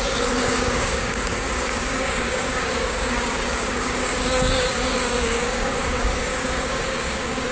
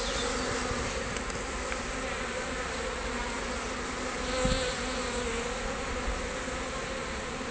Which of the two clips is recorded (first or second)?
second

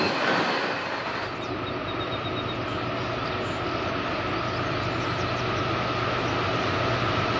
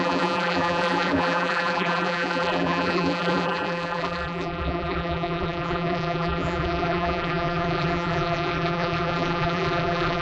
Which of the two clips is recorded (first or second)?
first